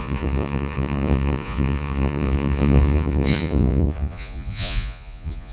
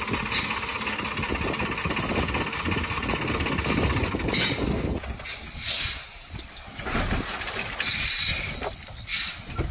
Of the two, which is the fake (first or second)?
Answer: first